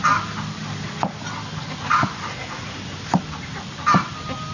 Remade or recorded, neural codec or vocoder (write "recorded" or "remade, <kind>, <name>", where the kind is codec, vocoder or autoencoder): recorded